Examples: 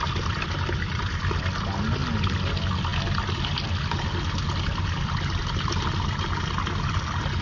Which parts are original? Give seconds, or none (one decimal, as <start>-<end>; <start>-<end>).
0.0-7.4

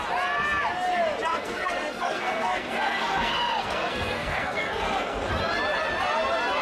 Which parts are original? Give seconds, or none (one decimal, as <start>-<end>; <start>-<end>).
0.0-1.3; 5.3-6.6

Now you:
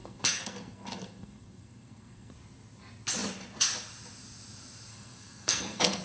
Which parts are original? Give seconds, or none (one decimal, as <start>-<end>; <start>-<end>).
2.3-4.9

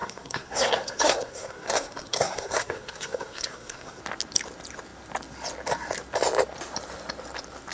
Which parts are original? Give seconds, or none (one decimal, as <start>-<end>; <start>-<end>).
4.0-7.7

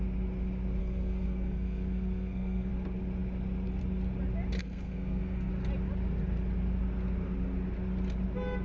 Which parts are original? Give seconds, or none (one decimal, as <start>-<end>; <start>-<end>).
0.0-0.8; 2.7-4.6; 5.5-8.6